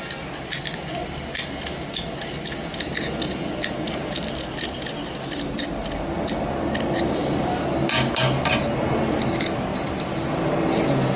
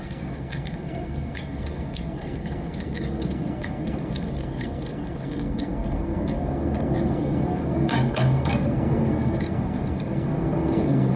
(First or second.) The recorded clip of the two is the first